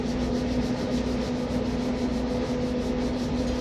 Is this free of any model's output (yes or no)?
yes